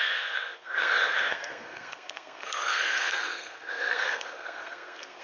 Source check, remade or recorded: remade